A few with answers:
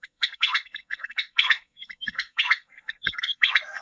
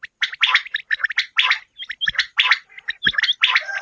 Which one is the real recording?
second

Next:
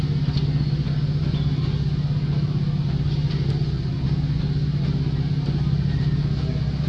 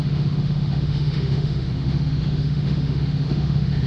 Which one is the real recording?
first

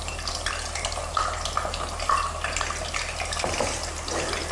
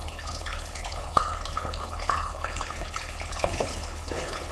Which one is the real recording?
first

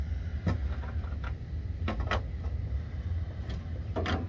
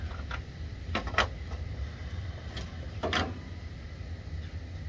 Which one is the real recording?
first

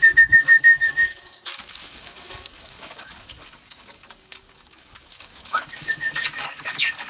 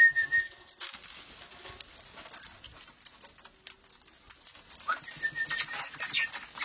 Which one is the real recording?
second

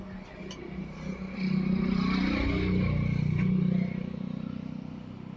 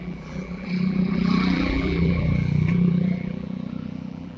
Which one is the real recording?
first